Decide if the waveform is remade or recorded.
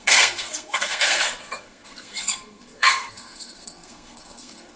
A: remade